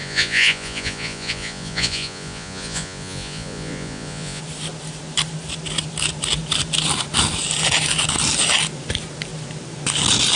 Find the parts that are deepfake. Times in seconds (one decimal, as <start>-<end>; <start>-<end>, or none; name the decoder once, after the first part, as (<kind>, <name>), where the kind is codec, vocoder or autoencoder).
0.0-4.4 (vocoder, Vocos)